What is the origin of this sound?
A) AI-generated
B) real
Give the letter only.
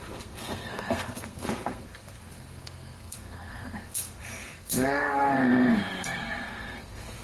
A